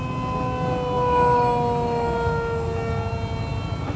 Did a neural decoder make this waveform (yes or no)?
no